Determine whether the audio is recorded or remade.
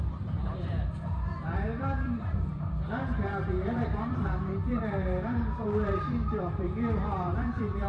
remade